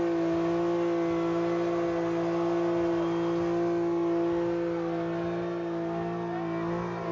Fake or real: real